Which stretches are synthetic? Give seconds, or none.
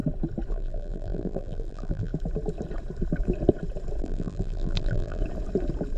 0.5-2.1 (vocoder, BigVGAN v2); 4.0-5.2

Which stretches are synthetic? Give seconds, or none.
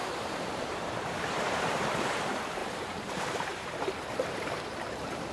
0.0-5.3 (vocoder, BigVGAN v2)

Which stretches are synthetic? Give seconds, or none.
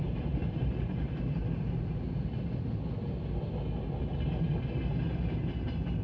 0.4-1.9 (vocoder, BigVGAN v2)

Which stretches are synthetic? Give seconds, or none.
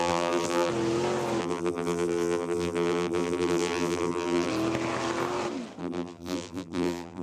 0.0-0.7 (vocoder, BigVGAN v2); 1.4-4.5; 5.8-7.2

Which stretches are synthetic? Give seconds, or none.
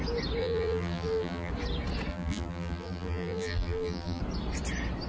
0.4-1.5 (vocoder, BigVGAN v2); 2.1-4.2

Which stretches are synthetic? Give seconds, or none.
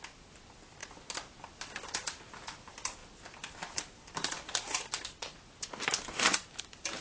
none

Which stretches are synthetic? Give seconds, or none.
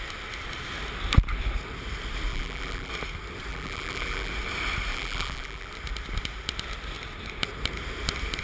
2.3-2.9 (vocoder, BigVGAN v2); 3.5-4.3; 4.9-5.7